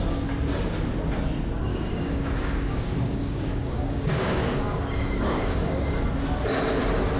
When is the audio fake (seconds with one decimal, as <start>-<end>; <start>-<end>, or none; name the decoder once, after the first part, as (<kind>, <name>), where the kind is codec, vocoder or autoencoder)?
1.7-6.0 (codec, DAC)